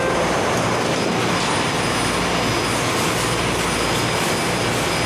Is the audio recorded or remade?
recorded